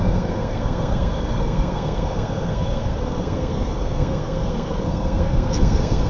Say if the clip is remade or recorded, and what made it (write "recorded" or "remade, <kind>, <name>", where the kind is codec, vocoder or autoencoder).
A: remade, codec, SNAC